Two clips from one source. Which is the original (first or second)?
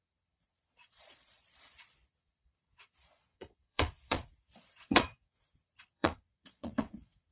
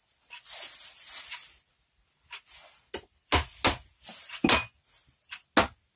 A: second